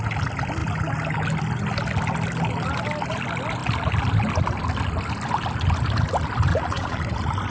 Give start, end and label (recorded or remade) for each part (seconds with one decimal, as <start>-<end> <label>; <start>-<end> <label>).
0.0-6.5 recorded; 6.5-7.0 remade; 7.0-7.5 recorded